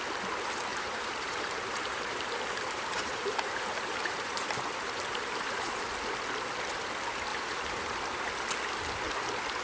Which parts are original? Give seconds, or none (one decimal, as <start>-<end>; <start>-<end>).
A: 0.0-0.7; 5.8-7.3; 8.0-9.6